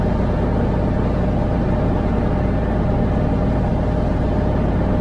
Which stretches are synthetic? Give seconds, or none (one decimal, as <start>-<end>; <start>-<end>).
none